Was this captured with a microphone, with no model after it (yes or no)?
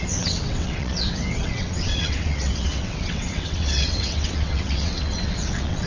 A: no